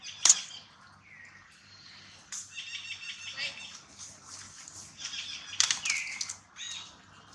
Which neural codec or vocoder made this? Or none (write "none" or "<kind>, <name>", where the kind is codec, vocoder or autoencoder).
none